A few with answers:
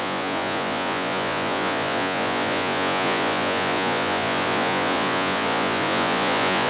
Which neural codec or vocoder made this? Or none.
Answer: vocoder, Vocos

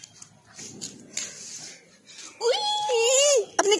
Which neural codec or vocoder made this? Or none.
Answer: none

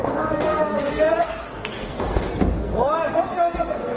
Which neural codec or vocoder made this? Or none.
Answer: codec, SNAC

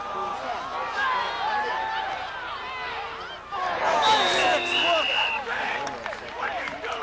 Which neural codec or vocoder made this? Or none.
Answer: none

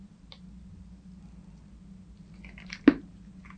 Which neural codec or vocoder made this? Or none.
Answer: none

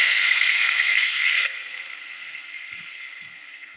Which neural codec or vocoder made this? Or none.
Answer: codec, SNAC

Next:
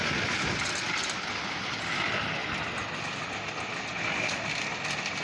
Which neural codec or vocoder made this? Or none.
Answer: none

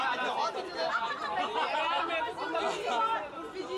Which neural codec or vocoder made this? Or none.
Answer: none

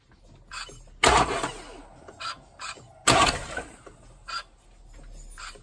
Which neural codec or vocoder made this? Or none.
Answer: none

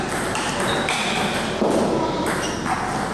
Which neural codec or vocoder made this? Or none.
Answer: none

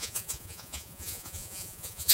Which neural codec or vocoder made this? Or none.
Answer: vocoder, Vocos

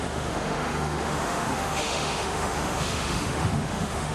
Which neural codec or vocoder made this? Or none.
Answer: autoencoder, DAC-VAE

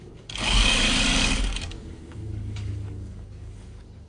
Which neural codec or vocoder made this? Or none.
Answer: codec, DAC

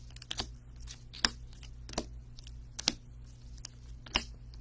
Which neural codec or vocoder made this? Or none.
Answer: none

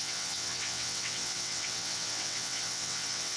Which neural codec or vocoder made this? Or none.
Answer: vocoder, WaveNeXt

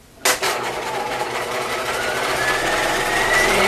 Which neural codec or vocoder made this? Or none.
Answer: none